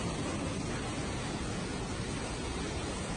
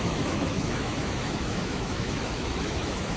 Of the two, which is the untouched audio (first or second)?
first